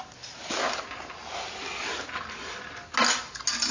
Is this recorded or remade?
recorded